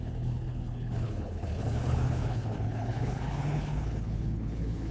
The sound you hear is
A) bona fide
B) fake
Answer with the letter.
B